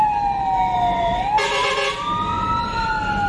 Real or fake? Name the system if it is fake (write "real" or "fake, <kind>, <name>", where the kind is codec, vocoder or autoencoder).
real